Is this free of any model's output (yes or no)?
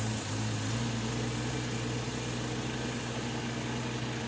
yes